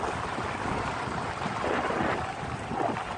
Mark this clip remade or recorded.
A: recorded